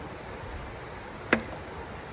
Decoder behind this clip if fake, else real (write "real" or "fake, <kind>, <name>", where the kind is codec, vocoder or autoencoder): real